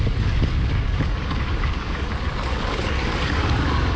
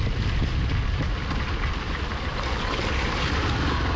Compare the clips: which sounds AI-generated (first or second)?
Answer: first